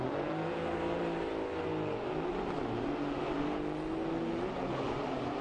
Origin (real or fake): real